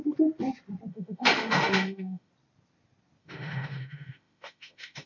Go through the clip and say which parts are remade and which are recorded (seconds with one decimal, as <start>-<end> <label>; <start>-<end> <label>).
0.0-0.9 recorded; 0.9-2.3 remade; 2.3-3.2 recorded; 3.2-5.1 remade